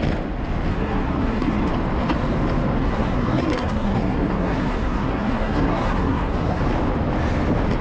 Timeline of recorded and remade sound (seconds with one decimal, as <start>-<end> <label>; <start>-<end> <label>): 0.0-0.7 recorded; 0.7-1.7 remade; 1.7-2.8 recorded; 2.8-6.6 remade; 6.6-7.8 recorded